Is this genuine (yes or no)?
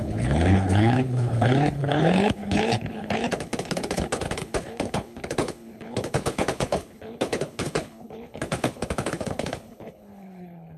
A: no